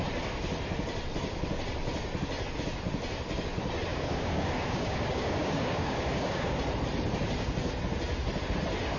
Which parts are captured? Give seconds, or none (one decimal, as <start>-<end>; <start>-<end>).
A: 0.0-3.9; 6.5-9.0